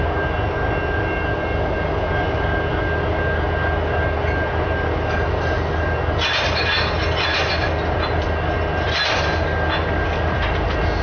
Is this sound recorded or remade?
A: recorded